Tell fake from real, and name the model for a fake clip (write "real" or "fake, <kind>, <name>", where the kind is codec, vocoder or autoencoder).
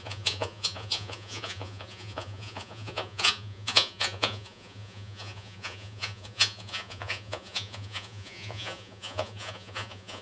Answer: fake, vocoder, Vocos